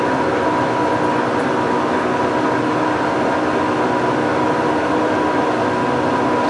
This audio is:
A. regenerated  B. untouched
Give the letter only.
B